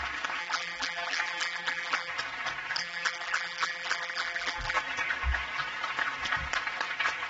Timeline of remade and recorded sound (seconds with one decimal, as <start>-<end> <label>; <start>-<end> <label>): 0.0-0.4 recorded; 0.4-2.1 remade; 2.1-2.8 recorded; 2.8-4.8 remade; 4.8-7.3 recorded